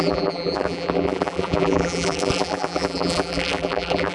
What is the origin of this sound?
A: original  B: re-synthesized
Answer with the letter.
B